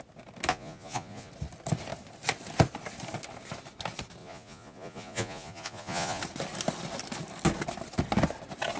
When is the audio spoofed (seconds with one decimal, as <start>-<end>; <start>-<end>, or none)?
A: 0.5-1.3; 4.2-6.2